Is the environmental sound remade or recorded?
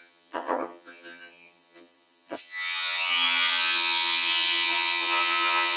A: remade